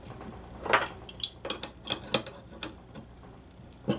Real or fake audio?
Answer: real